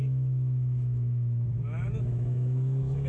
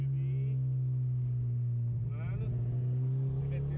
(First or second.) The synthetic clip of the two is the first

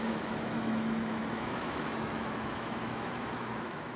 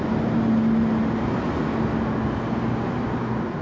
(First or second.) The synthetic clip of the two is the first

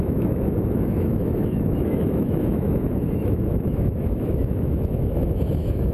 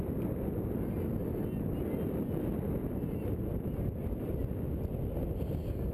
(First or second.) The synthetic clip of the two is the first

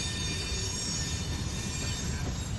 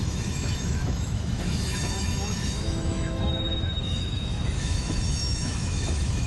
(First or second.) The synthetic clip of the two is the second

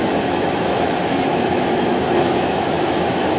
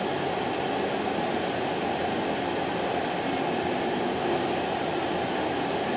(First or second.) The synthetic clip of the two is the first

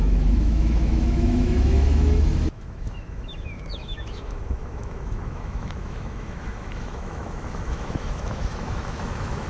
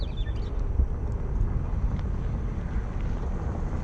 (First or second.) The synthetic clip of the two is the first